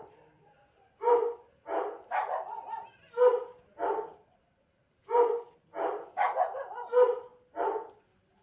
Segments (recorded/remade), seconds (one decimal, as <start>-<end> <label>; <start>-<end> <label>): 0.0-8.4 recorded